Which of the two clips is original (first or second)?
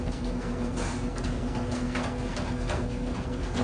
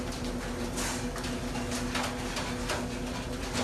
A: second